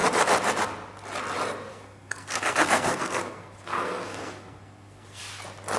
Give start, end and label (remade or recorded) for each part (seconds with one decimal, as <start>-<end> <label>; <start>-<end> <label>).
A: 0.0-1.7 recorded; 1.7-5.2 remade; 5.2-5.8 recorded